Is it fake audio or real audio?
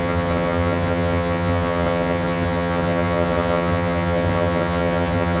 fake